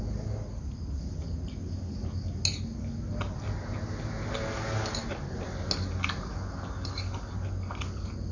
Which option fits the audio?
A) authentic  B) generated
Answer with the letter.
A